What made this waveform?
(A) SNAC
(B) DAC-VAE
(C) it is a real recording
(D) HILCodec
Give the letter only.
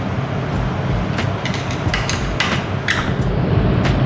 C